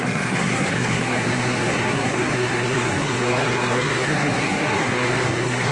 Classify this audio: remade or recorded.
remade